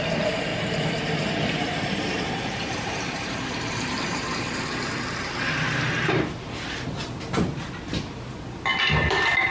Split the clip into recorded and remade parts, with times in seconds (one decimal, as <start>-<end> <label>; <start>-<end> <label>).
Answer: 0.0-0.5 recorded; 0.5-4.6 remade; 4.6-9.5 recorded